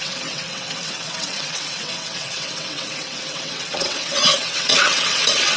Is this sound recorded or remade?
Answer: remade